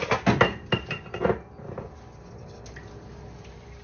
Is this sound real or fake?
real